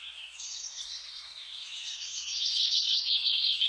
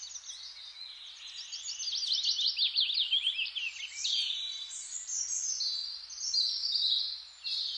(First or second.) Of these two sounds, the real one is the second